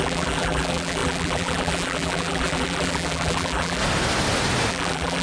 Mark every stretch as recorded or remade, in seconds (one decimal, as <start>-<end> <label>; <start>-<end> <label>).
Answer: 0.0-3.8 remade; 3.8-4.7 recorded; 4.7-5.2 remade